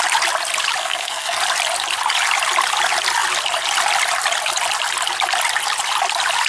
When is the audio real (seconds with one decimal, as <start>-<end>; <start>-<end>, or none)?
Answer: 0.0-0.8; 1.4-6.5